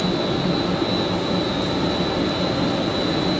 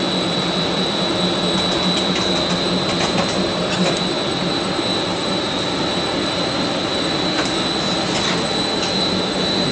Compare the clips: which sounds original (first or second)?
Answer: first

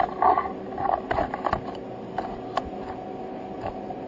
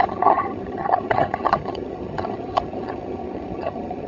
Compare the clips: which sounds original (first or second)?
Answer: first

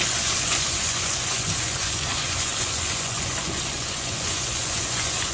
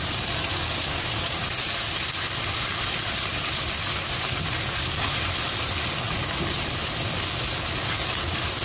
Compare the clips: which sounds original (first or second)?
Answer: second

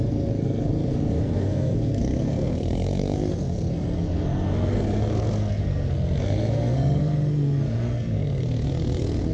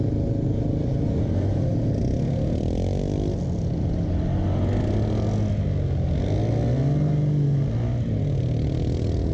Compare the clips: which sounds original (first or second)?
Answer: second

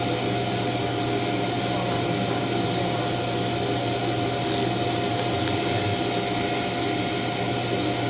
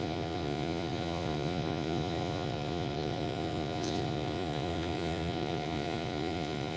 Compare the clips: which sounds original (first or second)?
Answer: first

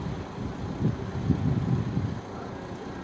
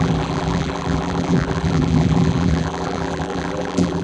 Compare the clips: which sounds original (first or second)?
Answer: first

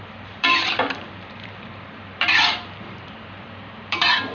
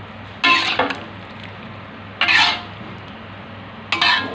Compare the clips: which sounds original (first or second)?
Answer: second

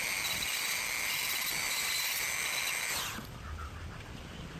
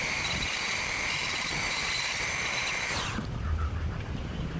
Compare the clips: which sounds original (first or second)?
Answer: first